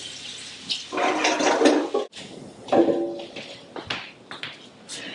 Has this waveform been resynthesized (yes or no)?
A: no